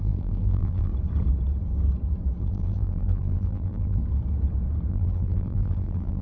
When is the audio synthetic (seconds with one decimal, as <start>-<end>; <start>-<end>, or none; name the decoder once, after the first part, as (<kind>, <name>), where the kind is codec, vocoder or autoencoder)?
0.0-0.9 (vocoder, BigVGAN v2); 2.4-4.0; 4.9-6.2

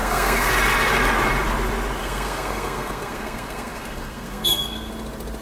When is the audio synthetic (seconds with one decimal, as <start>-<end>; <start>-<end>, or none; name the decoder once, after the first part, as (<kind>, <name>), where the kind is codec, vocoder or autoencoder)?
0.0-0.5 (codec, SNAC); 2.0-4.9

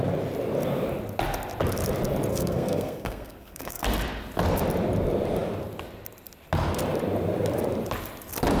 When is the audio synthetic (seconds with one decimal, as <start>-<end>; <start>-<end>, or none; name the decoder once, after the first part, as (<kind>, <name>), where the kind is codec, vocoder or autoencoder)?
2.3-3.8 (codec, SNAC)

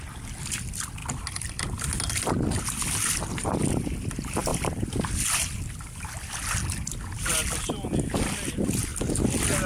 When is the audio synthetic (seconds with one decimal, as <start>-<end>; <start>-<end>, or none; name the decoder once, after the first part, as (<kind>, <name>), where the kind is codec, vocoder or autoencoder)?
1.0-1.6 (vocoder, BigVGAN v2); 4.5-7.0

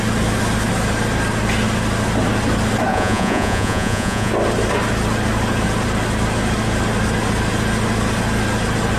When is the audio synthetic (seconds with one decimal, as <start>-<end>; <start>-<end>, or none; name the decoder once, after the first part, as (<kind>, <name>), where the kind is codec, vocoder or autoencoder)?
2.9-4.3 (vocoder, Vocos)

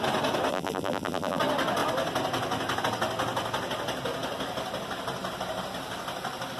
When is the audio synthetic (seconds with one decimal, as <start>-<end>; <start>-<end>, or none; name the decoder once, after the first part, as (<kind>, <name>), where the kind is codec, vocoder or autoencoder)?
0.5-1.4 (vocoder, BigVGAN v2)

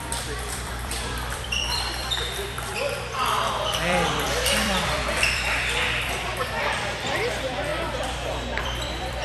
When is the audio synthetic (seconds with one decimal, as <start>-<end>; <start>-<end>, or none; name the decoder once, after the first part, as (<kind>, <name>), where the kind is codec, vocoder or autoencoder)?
0.0-7.7 (vocoder, BigVGAN v2); 8.6-9.2